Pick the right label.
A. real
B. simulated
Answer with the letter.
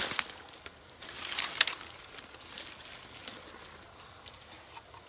A